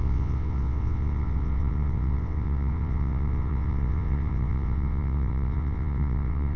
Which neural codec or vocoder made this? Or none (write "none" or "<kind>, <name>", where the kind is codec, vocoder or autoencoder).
vocoder, WaveNeXt